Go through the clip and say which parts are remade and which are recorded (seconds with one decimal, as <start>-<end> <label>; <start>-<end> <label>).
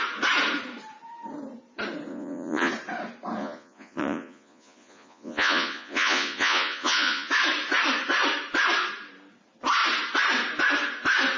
0.0-2.1 recorded; 2.1-2.7 remade; 2.7-3.4 recorded; 3.4-7.3 remade; 7.3-11.4 recorded